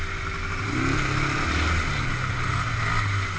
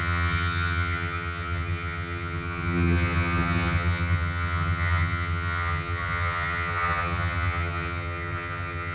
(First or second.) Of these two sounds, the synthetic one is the second